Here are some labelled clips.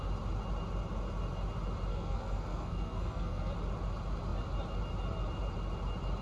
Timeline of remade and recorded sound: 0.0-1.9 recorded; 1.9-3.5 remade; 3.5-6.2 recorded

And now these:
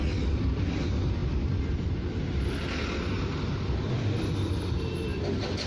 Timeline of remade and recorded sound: 0.0-5.1 recorded; 5.1-5.7 remade